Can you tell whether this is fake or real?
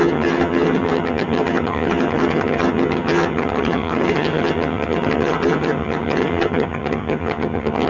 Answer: fake